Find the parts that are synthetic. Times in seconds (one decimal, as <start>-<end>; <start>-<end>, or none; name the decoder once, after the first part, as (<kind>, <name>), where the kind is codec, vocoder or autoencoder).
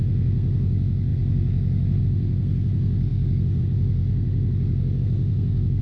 0.0-5.8 (codec, SNAC)